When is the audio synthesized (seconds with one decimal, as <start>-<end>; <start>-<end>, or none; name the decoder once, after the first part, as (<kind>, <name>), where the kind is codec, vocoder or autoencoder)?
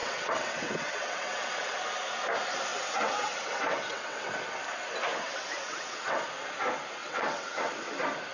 0.0-1.8 (vocoder, WaveNeXt); 2.7-4.3; 5.1-6.2; 7.0-7.7